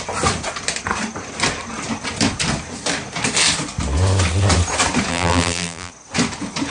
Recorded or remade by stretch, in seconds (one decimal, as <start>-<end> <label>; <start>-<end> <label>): 0.0-5.1 recorded; 5.1-5.9 remade; 5.9-6.7 recorded

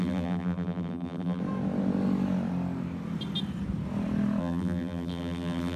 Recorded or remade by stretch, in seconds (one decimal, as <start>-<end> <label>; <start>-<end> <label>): 0.0-1.4 remade; 1.4-4.4 recorded; 4.4-5.8 remade

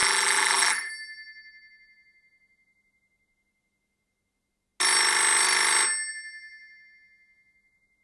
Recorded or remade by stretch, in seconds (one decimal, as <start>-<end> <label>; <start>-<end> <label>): 0.0-0.9 remade; 0.9-8.0 recorded

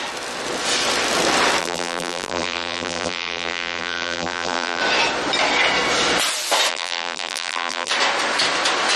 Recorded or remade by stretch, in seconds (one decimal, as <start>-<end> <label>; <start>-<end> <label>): 0.0-1.6 recorded; 1.6-4.8 remade; 4.8-6.7 recorded; 6.7-7.9 remade; 7.9-9.0 recorded

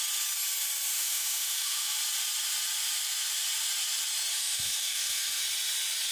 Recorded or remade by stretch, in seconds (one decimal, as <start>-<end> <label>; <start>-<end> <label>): 0.0-0.9 recorded; 0.9-2.0 remade; 2.0-4.3 recorded; 4.3-5.4 remade; 5.4-6.1 recorded

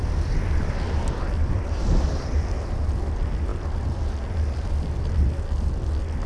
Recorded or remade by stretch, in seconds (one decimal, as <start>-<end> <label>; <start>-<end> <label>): 0.0-6.3 recorded

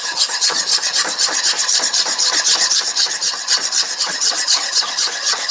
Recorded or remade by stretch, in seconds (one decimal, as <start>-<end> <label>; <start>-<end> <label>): 0.0-0.7 remade; 0.7-4.0 recorded; 4.0-5.5 remade

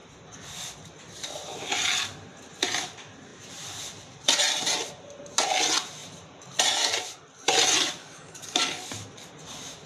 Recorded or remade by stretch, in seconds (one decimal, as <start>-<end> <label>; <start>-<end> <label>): 0.0-8.0 recorded; 8.0-8.9 remade; 8.9-9.9 recorded